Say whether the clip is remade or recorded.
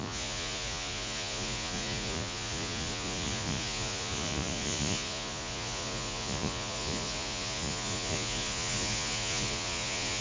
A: remade